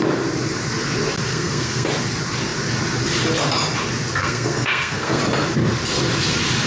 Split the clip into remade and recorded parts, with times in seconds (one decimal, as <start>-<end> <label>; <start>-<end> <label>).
0.0-1.3 recorded; 1.3-1.9 remade; 1.9-4.2 recorded; 4.2-5.2 remade; 5.2-6.7 recorded

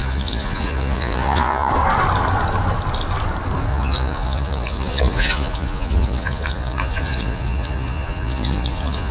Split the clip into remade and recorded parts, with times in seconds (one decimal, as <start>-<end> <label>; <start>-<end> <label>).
0.0-1.7 remade; 1.7-3.7 recorded; 3.7-9.1 remade